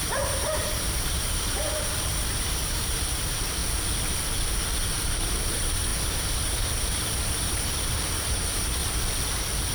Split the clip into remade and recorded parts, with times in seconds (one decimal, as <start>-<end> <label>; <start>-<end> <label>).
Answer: 0.0-3.6 remade; 3.6-5.2 recorded; 5.2-8.8 remade; 8.8-9.7 recorded